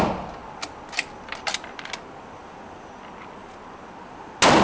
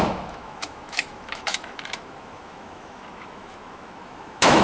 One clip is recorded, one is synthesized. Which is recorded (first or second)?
first